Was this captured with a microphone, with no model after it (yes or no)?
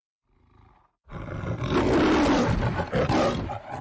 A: yes